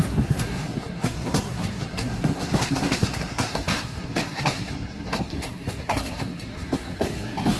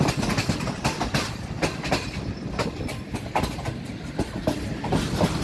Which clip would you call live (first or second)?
second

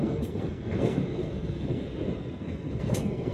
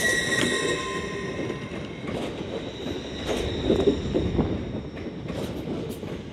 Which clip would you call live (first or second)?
second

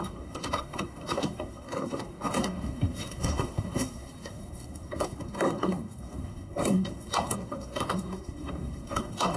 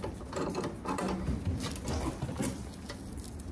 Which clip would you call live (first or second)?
second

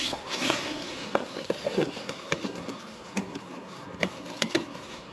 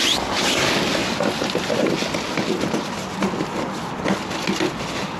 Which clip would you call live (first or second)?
second